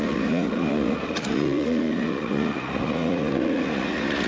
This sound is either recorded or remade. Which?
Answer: remade